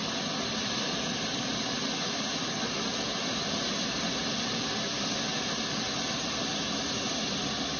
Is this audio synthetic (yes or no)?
no